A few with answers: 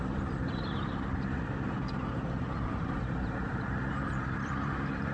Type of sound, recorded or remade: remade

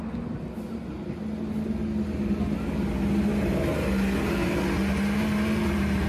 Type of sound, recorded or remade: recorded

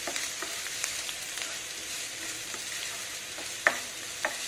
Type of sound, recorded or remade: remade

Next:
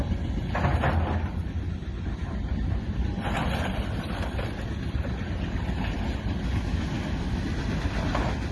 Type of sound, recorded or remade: recorded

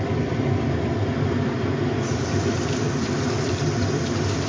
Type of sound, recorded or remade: remade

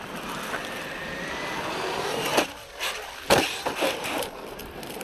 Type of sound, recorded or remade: recorded